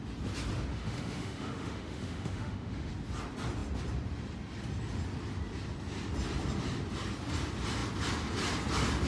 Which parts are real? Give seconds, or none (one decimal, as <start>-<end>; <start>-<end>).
0.0-0.7; 2.9-9.1